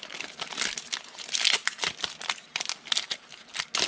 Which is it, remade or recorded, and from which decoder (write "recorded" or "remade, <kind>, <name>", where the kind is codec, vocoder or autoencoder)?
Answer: recorded